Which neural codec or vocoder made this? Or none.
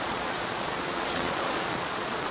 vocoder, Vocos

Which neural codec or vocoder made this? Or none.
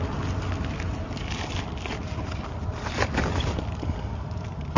none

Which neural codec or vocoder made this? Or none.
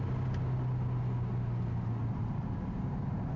none